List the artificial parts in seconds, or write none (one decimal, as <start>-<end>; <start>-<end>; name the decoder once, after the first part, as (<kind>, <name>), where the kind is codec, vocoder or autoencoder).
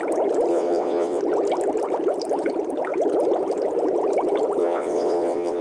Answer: 0.5-1.2 (vocoder, WaveNeXt); 4.6-5.6